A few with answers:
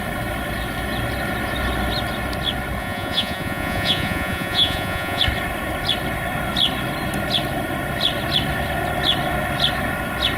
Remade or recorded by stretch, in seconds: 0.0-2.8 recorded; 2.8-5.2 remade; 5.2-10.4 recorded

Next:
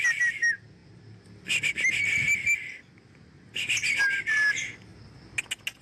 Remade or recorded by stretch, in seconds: 0.0-5.8 recorded

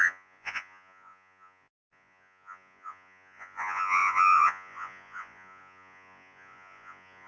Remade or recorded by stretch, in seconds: 0.0-7.3 remade